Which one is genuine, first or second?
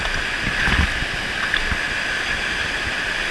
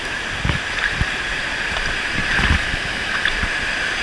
first